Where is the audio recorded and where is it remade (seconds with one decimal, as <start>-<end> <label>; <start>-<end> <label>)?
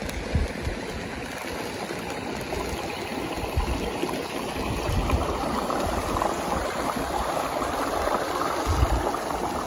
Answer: 0.0-9.7 recorded